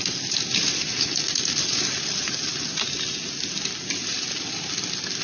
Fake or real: real